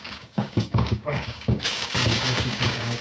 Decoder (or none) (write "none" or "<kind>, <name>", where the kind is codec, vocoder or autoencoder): codec, DAC